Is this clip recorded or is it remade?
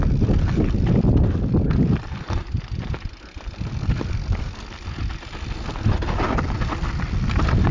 recorded